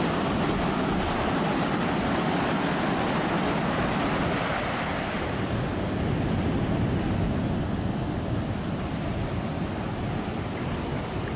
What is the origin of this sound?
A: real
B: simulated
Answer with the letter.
A